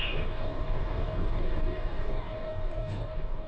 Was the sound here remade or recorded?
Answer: remade